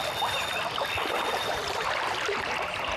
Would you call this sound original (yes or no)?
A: no